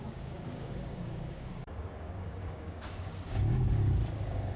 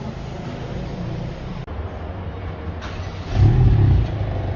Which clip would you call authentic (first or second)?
second